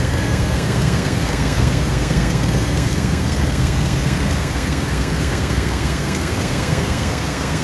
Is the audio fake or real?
fake